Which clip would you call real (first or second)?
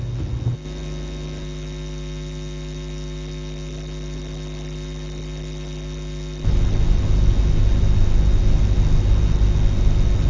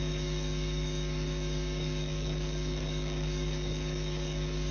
first